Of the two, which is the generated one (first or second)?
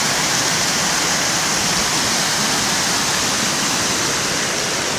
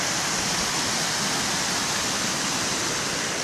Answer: first